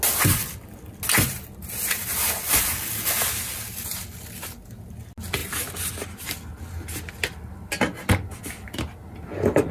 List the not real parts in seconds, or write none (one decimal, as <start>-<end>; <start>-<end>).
none